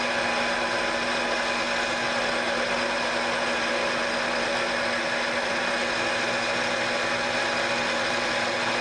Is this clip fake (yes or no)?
no